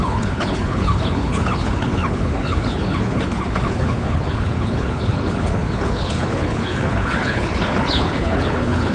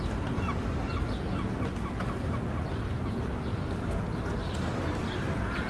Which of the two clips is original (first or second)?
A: second